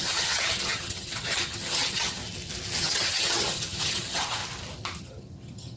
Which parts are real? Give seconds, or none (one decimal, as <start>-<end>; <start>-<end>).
2.2-2.8; 4.4-5.0